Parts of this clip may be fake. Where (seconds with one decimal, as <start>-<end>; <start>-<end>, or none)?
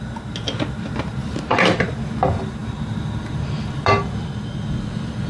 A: 1.2-2.0; 2.6-3.9